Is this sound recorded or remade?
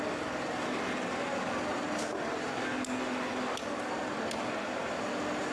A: recorded